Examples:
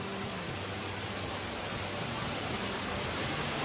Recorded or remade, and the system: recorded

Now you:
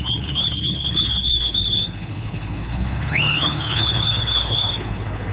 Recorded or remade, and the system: remade, codec, HILCodec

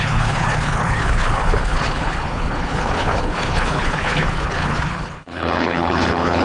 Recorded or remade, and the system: remade, codec, HILCodec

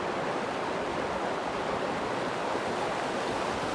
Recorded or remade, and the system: recorded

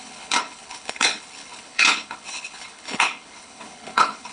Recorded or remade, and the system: remade, codec, HILCodec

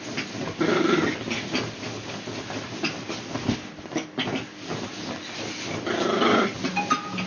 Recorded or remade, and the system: recorded